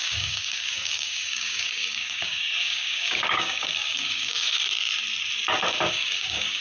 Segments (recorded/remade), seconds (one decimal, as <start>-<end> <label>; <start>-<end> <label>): 0.0-4.6 remade; 4.6-5.9 recorded; 5.9-6.6 remade